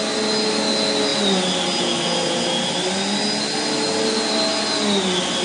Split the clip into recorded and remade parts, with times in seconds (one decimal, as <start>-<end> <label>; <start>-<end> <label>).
0.0-5.4 recorded

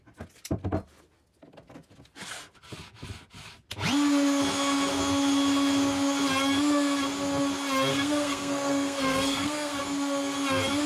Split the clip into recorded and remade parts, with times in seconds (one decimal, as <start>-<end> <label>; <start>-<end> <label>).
0.0-7.9 recorded; 7.9-9.8 remade; 9.8-10.9 recorded